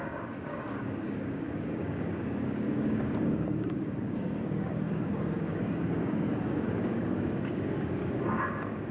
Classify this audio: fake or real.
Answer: fake